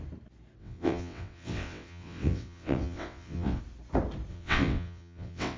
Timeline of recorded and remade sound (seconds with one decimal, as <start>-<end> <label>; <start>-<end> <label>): 0.0-0.6 recorded; 0.6-3.6 remade; 3.6-4.3 recorded; 4.3-5.6 remade